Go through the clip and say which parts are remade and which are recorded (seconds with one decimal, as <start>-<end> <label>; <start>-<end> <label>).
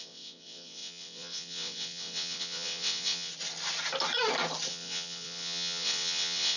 0.0-3.3 remade; 3.3-4.7 recorded; 4.7-6.6 remade